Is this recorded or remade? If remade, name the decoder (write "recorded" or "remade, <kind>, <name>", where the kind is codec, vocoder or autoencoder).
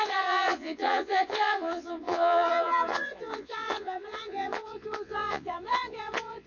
remade, vocoder, Vocos